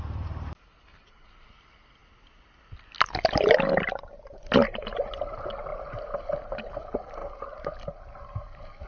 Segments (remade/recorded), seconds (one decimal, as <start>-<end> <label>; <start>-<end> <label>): 0.0-8.9 recorded